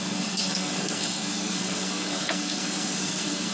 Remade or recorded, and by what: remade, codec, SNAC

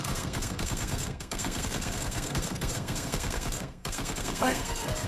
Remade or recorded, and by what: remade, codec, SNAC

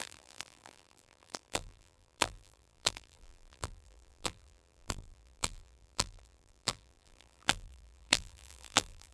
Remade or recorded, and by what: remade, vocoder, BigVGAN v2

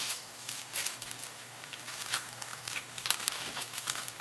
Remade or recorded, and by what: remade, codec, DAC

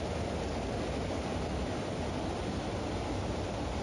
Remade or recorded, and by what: recorded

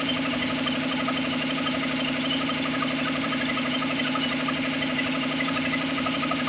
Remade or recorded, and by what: remade, vocoder, BigVGAN v2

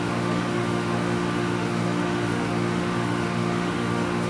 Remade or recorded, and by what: remade, autoencoder, DAC-VAE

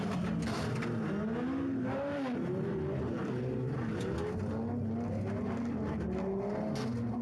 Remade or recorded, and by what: recorded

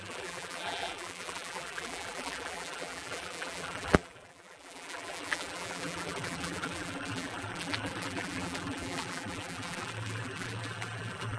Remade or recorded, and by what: remade, vocoder, BigVGAN v2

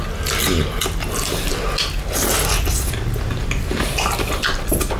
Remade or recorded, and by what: recorded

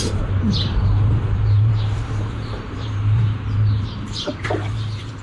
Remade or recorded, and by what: remade, vocoder, BigVGAN v2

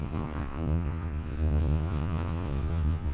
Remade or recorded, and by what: remade, vocoder, Vocos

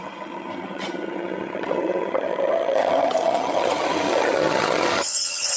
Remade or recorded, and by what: remade, vocoder, HiFi-GAN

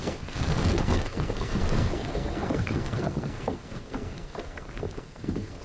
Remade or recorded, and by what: remade, codec, SNAC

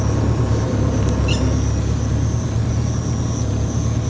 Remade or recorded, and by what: recorded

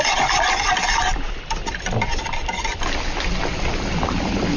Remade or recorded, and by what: recorded